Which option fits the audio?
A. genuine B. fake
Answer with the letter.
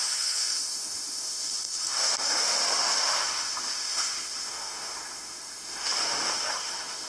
B